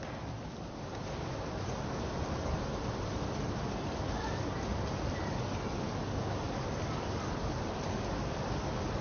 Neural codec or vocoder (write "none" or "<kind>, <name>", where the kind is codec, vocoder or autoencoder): none